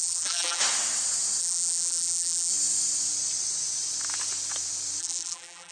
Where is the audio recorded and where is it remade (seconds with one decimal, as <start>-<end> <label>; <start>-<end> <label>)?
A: 0.0-0.6 remade; 0.6-1.4 recorded; 1.4-2.5 remade; 2.5-5.0 recorded; 5.0-5.7 remade

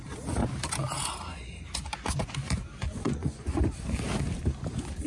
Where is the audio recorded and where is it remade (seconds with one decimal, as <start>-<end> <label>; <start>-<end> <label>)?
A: 0.0-2.8 recorded; 2.8-3.6 remade; 3.6-5.1 recorded

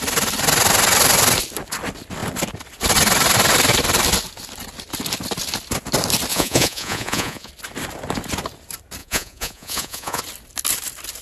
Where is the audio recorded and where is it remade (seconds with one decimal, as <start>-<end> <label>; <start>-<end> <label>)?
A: 0.0-6.3 recorded; 6.3-7.5 remade; 7.5-9.0 recorded; 9.0-10.2 remade; 10.2-11.2 recorded

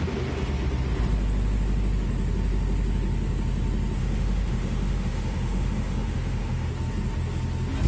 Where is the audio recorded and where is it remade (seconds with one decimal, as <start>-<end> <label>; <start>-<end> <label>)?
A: 0.0-4.0 recorded; 4.0-6.7 remade; 6.7-7.9 recorded

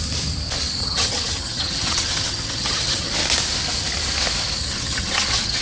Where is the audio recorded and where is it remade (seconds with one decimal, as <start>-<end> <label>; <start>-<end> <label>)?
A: 0.0-0.8 recorded; 0.8-3.1 remade; 3.1-4.6 recorded; 4.6-5.6 remade